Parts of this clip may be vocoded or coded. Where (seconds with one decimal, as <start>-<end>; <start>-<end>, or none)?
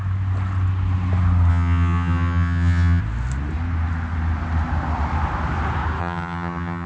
1.5-3.0; 6.0-6.9